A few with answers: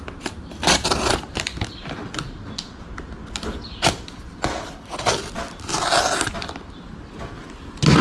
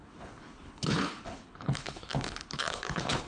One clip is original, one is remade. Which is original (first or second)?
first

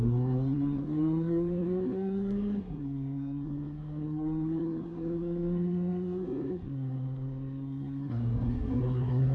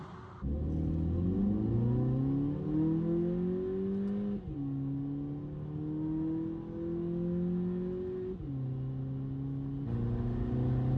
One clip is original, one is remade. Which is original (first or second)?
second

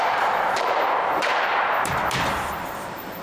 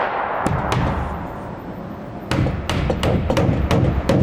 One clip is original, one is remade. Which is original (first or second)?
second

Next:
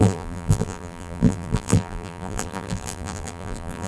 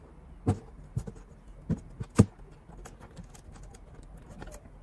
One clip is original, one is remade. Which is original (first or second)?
second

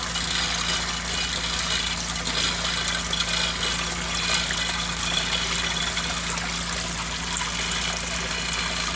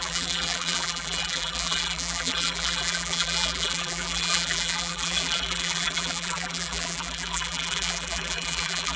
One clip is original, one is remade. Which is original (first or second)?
first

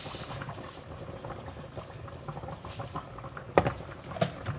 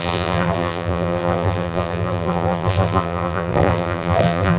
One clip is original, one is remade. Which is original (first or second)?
first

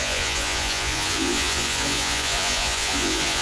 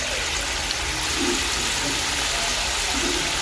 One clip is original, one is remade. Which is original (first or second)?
second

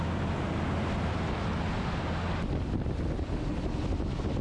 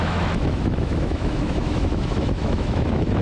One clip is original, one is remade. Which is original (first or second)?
first